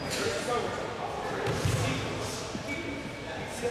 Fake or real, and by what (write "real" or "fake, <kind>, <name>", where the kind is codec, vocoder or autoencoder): real